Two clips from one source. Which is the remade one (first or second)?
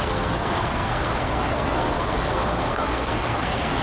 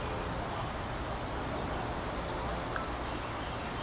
first